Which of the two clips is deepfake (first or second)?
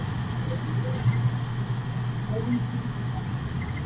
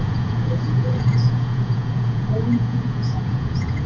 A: second